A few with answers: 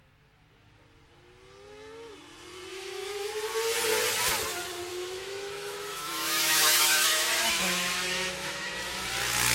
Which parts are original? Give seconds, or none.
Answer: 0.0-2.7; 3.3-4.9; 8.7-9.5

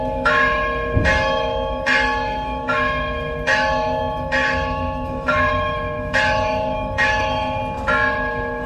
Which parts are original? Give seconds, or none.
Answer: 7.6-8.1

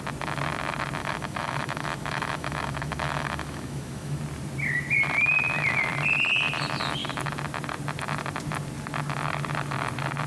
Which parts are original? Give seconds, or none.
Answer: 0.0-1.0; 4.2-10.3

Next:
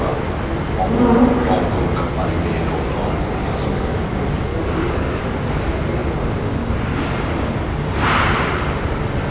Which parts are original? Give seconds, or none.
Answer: 0.0-3.4; 4.0-4.5; 5.2-9.3

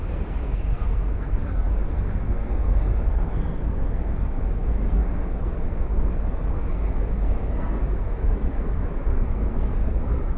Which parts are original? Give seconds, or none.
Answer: none